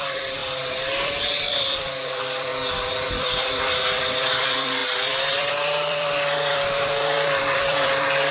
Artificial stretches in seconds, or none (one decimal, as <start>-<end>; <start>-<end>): 0.0-2.5; 3.1-8.3